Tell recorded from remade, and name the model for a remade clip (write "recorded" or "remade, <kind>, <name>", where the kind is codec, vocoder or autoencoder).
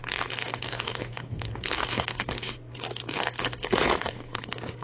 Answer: remade, codec, SNAC